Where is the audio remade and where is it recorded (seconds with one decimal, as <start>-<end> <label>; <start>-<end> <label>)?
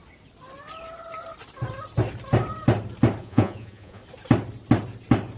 0.0-3.2 recorded; 3.2-4.0 remade; 4.0-5.4 recorded